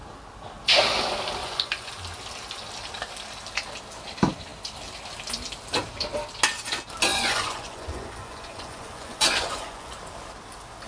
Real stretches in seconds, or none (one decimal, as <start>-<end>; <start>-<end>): 0.0-1.4; 1.9-7.1; 10.0-10.9

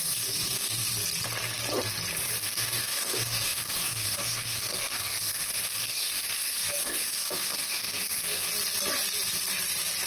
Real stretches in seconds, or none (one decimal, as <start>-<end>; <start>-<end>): 0.9-2.4; 8.5-10.1

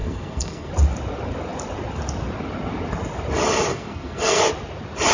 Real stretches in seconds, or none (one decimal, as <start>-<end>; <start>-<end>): 0.7-3.7; 4.4-5.1

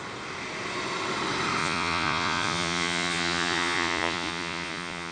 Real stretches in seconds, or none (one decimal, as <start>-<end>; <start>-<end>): 0.0-1.6

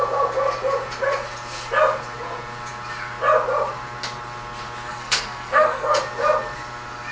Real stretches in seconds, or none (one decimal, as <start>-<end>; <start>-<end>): 0.0-4.9; 6.0-7.1